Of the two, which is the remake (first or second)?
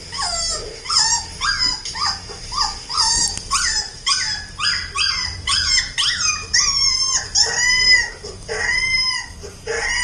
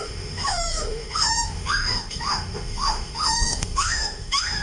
second